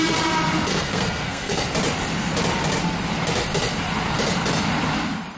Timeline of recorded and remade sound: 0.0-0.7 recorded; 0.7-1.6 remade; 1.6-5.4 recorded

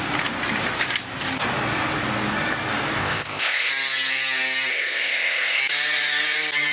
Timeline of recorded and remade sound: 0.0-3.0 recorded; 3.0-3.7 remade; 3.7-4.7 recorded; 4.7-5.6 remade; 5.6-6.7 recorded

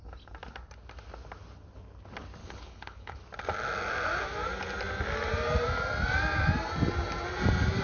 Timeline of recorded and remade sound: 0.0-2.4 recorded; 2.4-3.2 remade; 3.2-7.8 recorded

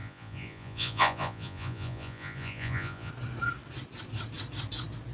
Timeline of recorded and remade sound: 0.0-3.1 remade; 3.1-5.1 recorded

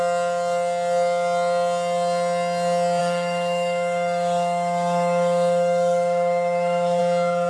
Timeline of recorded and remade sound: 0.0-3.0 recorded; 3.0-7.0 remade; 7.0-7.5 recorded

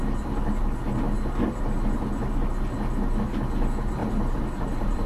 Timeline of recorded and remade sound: 0.0-4.0 recorded; 4.0-5.1 remade